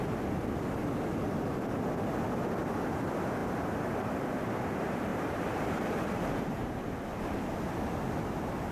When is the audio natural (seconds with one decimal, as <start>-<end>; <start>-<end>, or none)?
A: 0.0-5.1; 6.9-8.7